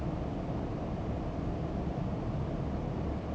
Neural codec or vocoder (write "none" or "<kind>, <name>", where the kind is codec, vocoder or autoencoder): none